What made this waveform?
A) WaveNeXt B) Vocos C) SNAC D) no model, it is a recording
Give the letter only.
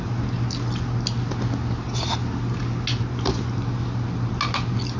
D